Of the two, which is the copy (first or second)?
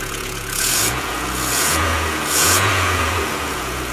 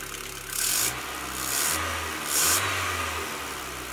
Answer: first